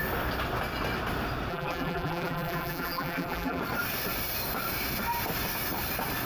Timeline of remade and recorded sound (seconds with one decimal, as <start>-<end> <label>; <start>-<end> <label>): 0.0-1.5 recorded; 1.5-3.6 remade; 3.6-6.3 recorded